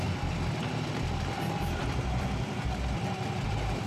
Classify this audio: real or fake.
fake